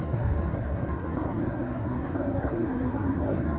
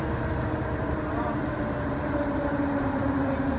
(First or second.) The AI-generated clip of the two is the first